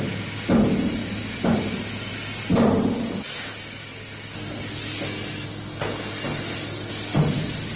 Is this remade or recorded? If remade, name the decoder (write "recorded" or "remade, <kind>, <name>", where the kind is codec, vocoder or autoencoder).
recorded